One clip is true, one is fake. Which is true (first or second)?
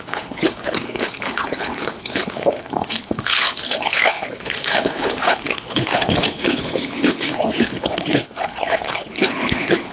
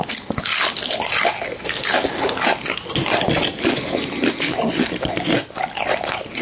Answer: second